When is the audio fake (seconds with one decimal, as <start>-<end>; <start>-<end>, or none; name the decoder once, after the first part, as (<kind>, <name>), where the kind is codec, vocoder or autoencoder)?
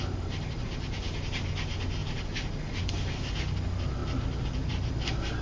none